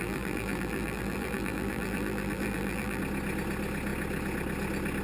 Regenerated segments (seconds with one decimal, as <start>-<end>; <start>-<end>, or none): 0.0-3.0